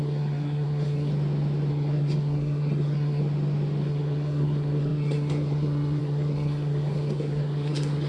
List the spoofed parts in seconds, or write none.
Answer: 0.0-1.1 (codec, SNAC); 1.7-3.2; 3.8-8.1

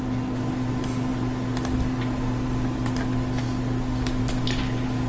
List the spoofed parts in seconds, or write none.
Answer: none